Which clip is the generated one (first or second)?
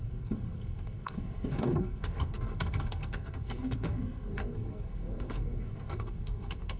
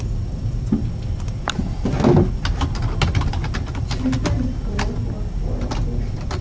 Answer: first